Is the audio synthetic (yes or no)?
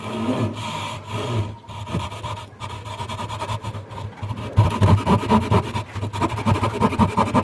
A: no